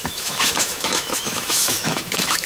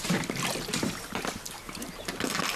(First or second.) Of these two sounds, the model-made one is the first